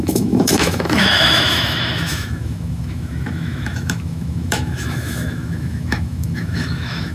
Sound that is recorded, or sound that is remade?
remade